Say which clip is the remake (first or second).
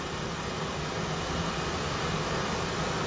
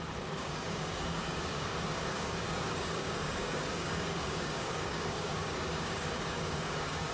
second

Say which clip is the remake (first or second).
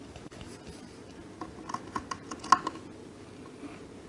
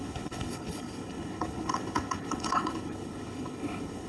second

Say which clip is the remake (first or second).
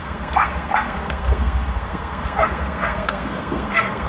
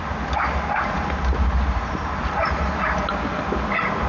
first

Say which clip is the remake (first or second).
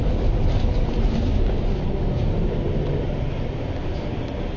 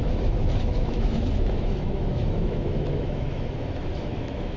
second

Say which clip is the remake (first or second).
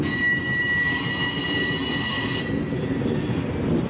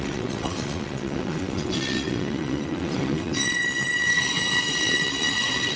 second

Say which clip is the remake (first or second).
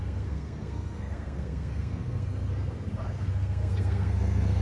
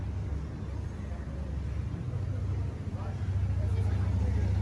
first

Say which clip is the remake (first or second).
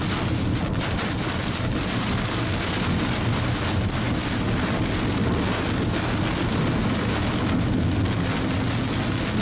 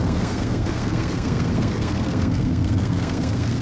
second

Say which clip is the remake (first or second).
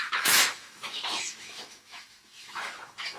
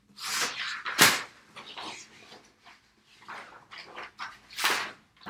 first